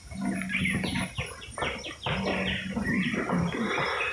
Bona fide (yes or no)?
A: yes